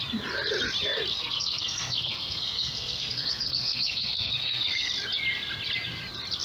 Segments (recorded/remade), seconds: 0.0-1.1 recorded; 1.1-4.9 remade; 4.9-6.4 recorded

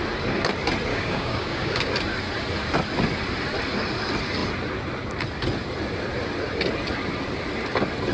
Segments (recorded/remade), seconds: 0.0-0.9 recorded; 0.9-1.9 remade; 1.9-8.1 recorded

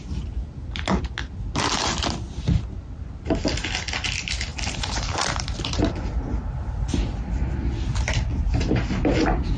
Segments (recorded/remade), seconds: 0.0-4.5 recorded; 4.5-6.2 remade; 6.2-9.6 recorded

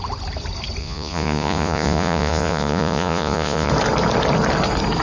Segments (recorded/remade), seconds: 0.0-0.8 recorded; 0.8-3.7 remade; 3.7-5.0 recorded

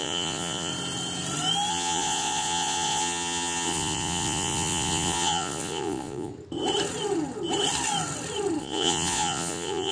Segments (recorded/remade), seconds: 0.0-0.7 remade; 0.7-1.7 recorded; 1.7-6.3 remade; 6.3-8.6 recorded; 8.6-9.9 remade